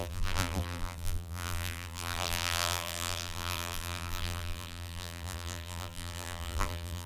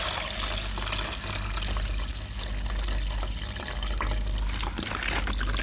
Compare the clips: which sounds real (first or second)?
second